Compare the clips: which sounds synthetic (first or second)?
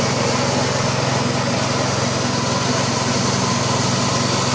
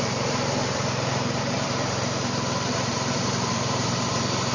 second